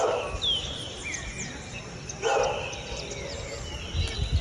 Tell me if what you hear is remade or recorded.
recorded